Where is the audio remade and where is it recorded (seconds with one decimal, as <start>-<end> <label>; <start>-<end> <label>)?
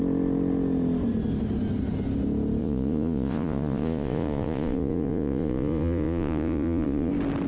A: 0.0-2.6 recorded; 2.6-7.1 remade; 7.1-7.5 recorded